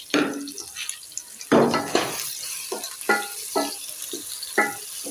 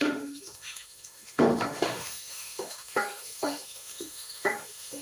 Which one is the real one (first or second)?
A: first